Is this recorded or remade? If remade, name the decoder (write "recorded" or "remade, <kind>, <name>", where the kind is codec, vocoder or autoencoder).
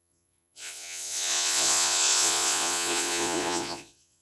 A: remade, vocoder, Vocos